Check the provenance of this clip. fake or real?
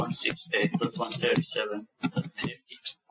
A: real